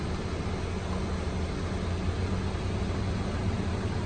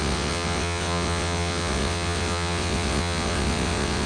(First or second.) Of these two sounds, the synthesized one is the second